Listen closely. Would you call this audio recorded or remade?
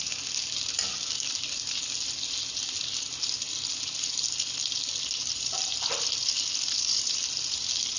recorded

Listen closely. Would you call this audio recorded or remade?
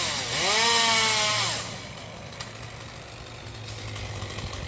recorded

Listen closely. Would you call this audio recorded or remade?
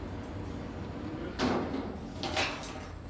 recorded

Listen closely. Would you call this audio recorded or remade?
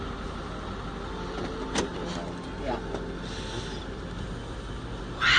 recorded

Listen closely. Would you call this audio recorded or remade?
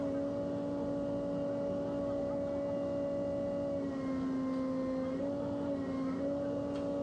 recorded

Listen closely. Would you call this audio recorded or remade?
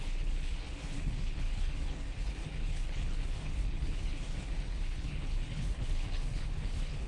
remade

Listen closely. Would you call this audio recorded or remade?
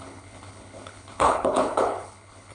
remade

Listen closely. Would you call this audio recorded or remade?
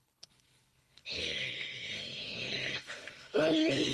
remade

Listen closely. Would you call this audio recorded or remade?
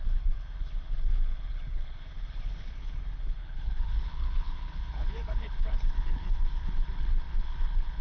remade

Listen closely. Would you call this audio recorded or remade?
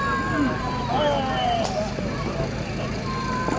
recorded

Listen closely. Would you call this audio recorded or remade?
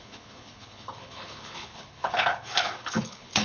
remade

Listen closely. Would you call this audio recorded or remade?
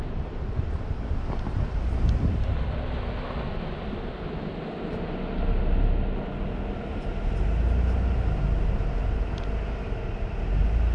recorded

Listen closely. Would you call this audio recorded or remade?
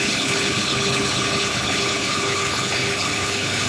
remade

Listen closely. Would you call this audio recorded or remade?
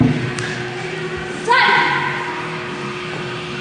recorded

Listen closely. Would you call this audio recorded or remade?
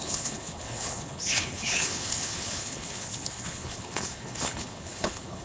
remade